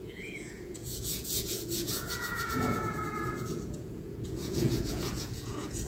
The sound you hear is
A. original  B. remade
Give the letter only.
B